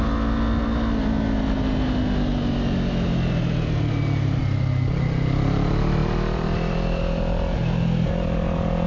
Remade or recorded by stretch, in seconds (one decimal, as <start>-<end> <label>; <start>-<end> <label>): 0.0-6.0 recorded; 6.0-6.7 remade; 6.7-8.9 recorded

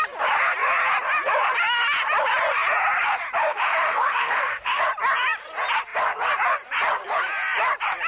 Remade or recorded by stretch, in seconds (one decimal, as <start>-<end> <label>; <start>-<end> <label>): 0.0-3.4 recorded; 3.4-4.8 remade; 4.8-8.1 recorded

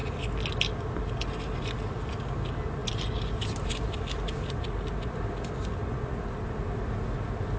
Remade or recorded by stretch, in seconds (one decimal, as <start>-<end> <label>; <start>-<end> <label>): 0.0-7.6 recorded

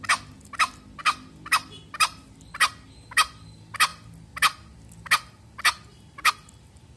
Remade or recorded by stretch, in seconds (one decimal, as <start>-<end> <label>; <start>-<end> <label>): 0.0-7.0 recorded